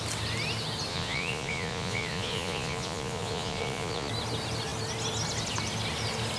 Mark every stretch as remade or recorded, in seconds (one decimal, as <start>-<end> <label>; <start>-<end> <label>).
0.0-0.9 recorded; 0.9-4.1 remade; 4.1-6.4 recorded

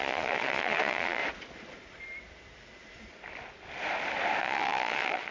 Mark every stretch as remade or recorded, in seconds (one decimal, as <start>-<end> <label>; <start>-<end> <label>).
0.0-1.2 remade; 1.2-4.4 recorded; 4.4-5.3 remade